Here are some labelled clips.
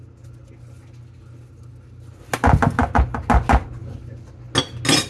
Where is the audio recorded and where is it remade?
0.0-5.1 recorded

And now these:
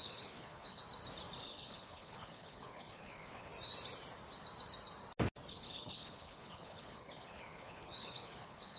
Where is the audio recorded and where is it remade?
0.0-0.8 remade; 0.8-1.4 recorded; 1.4-3.5 remade; 3.5-5.5 recorded; 5.5-8.8 remade

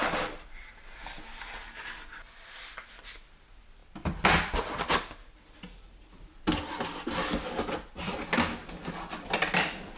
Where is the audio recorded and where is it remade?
0.0-10.0 recorded

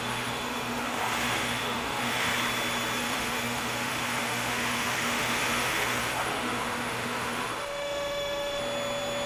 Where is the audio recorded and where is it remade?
0.0-2.3 remade; 2.3-3.0 recorded; 3.0-8.6 remade; 8.6-9.3 recorded

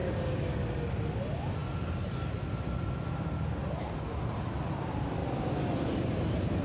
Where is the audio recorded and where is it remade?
0.0-6.6 recorded